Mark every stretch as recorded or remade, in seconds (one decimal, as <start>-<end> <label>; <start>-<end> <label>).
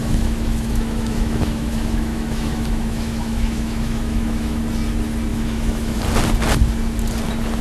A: 0.0-4.6 remade; 4.6-5.3 recorded; 5.3-6.0 remade; 6.0-7.6 recorded